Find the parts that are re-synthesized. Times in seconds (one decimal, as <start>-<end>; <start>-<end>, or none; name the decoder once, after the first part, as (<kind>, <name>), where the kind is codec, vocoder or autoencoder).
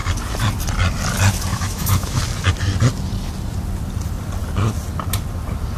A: 1.5-2.2 (autoencoder, DAC-VAE)